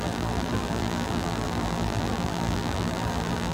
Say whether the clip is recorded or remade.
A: remade